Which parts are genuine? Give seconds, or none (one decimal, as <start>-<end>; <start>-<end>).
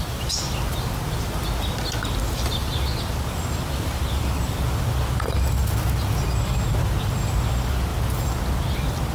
0.0-9.1